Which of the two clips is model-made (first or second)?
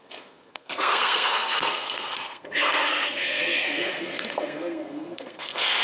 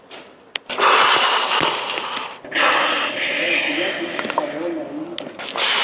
first